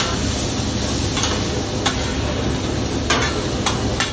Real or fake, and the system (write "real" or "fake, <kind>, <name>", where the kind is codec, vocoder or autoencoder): real